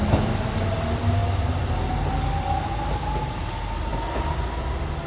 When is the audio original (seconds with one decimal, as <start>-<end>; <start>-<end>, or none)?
0.0-5.1